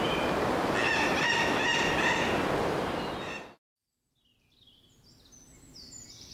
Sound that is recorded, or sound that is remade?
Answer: recorded